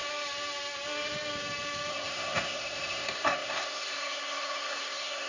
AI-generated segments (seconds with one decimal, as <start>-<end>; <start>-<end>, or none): 1.9-5.3